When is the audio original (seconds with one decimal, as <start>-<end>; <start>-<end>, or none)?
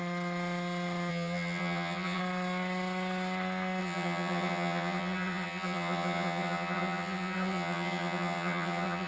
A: 0.0-1.1; 2.2-3.8